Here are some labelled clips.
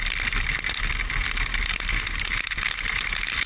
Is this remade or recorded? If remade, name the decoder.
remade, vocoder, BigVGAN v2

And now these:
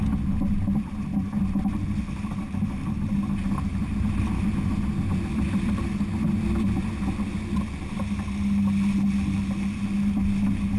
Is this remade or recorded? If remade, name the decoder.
recorded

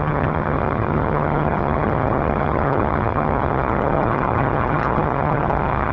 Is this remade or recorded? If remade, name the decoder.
remade, vocoder, HiFi-GAN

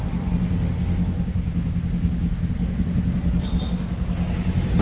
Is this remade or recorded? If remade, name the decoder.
recorded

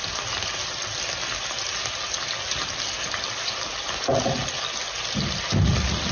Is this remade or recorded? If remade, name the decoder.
recorded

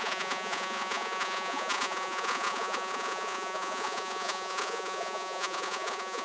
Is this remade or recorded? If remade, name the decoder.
remade, vocoder, Vocos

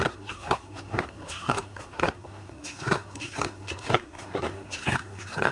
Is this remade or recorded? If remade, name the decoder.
remade, codec, SNAC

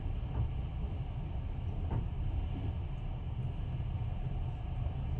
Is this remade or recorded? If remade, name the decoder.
recorded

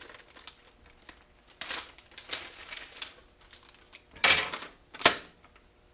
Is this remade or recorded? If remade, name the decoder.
recorded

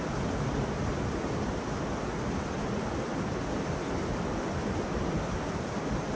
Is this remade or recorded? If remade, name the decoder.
recorded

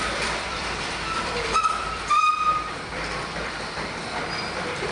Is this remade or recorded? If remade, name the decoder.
remade, vocoder, BigVGAN v2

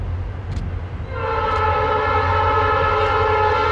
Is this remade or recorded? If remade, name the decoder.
recorded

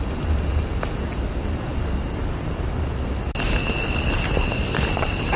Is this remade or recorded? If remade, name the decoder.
recorded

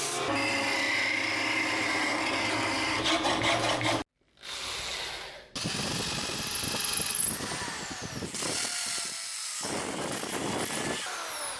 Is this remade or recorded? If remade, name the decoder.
recorded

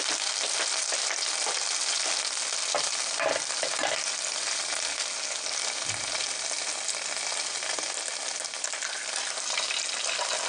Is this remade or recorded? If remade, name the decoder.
recorded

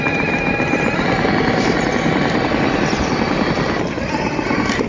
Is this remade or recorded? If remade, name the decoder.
recorded